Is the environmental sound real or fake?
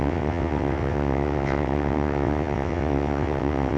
fake